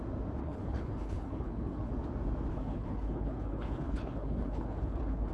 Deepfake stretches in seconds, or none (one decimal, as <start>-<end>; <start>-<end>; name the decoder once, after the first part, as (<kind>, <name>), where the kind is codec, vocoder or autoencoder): 0.4-1.9 (codec, HILCodec); 2.5-5.3